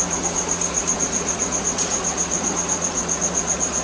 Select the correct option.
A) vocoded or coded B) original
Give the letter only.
A